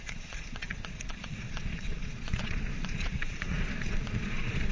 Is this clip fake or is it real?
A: fake